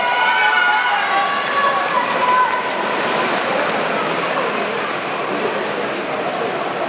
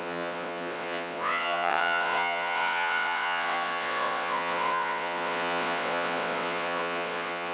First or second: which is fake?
second